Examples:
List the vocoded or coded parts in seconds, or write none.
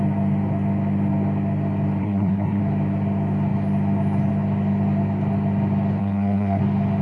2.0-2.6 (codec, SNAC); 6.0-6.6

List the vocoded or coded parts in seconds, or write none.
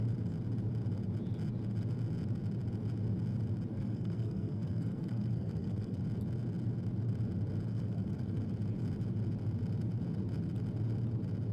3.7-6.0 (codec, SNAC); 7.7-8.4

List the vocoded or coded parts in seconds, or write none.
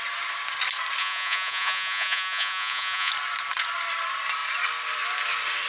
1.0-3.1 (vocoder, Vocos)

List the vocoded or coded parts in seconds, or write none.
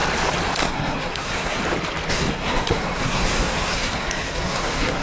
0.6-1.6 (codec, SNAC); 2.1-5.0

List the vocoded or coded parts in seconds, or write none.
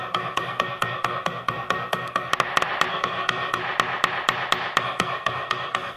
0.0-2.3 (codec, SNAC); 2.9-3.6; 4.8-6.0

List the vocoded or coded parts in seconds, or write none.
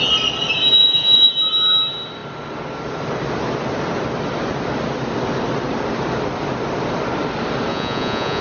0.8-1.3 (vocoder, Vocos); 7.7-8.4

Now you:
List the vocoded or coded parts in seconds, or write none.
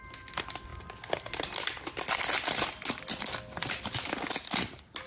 0.7-3.8 (vocoder, BigVGAN v2)